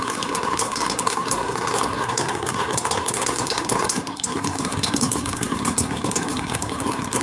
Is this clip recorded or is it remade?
remade